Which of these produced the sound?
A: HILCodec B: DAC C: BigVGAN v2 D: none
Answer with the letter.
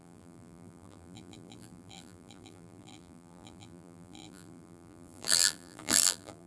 C